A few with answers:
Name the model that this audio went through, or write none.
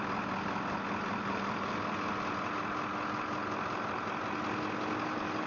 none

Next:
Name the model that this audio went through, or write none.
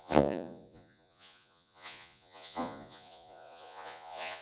vocoder, Vocos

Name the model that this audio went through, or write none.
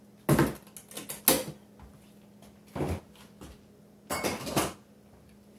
none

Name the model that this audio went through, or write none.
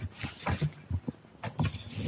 none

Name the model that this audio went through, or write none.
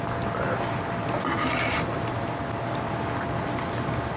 none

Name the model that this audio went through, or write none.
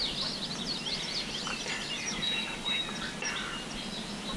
none